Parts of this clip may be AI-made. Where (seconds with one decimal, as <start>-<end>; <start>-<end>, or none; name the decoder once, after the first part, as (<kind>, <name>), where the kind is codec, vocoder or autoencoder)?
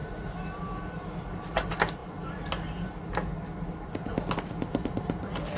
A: none